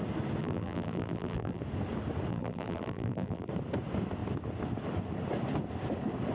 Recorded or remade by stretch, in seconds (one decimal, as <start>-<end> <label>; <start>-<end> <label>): 0.0-0.4 recorded; 0.4-1.6 remade; 1.6-2.3 recorded; 2.3-3.5 remade; 3.5-6.3 recorded